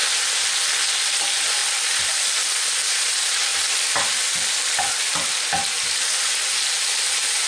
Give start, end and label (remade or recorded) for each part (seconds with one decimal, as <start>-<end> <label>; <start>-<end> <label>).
0.0-7.5 recorded